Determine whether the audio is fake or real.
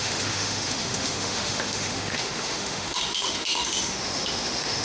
fake